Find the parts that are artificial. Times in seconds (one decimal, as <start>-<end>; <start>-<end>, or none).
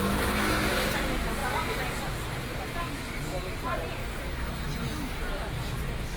4.0-5.2